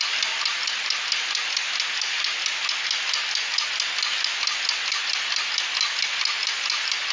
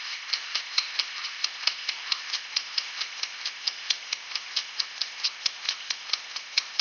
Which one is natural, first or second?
first